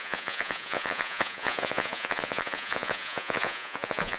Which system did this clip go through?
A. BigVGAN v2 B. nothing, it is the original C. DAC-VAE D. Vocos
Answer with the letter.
D